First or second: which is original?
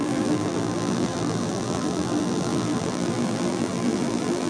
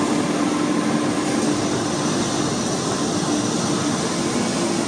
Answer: second